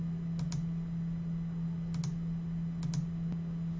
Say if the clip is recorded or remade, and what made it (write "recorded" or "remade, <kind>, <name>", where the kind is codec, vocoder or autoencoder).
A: recorded